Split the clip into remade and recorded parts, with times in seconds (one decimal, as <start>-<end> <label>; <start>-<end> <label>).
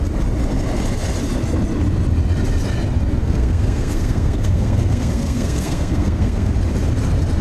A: 0.0-3.2 recorded; 3.2-6.5 remade; 6.5-7.4 recorded